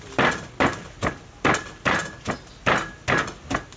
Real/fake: real